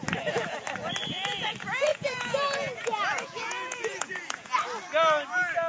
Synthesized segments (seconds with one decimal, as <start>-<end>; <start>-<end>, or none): 1.9-4.6